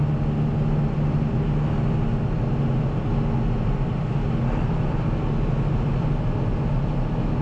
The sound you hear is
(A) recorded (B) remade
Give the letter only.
A